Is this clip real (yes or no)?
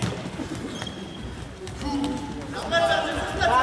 yes